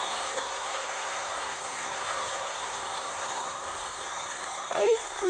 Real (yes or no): no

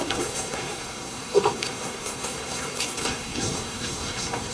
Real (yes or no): no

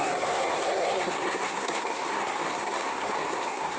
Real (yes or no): no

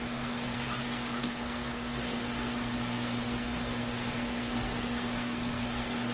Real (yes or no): no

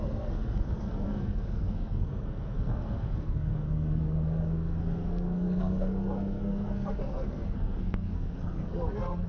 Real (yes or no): no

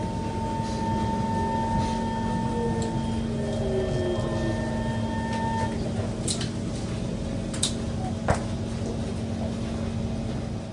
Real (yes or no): yes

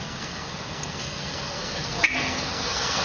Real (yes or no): no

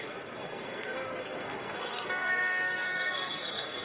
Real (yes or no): no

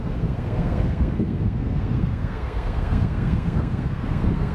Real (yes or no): no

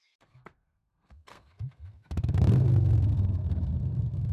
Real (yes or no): no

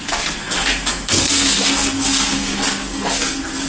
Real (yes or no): no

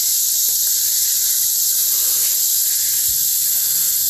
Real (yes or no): yes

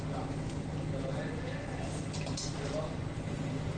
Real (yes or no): yes